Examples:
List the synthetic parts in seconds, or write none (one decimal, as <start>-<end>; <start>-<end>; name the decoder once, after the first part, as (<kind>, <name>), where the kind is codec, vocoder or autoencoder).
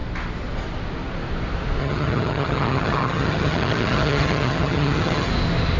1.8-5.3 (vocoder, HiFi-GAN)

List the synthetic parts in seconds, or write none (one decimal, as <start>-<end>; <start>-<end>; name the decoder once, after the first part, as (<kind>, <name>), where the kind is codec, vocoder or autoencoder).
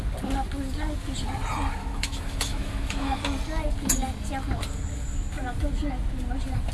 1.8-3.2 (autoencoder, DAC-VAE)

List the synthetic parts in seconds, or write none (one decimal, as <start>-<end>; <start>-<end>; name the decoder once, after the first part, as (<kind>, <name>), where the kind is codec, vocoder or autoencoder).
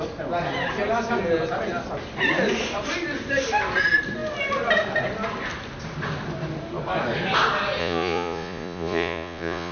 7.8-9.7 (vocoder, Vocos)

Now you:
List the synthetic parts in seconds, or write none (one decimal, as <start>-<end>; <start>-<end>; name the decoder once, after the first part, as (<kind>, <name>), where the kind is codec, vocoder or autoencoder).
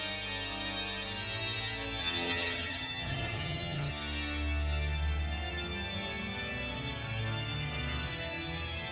2.0-3.9 (vocoder, HiFi-GAN)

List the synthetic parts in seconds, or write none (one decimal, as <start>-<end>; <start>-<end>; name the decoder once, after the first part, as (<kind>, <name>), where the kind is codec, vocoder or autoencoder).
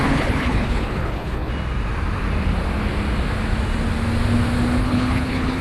0.0-1.5 (codec, HILCodec); 4.8-5.6